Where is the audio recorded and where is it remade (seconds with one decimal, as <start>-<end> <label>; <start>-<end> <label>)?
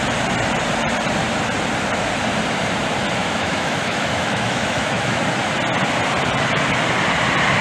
0.0-3.2 recorded; 3.2-5.2 remade; 5.2-7.6 recorded